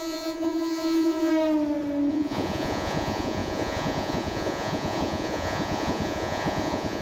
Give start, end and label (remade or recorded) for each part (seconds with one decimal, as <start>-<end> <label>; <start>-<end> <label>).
0.0-1.3 remade; 1.3-2.1 recorded; 2.1-7.0 remade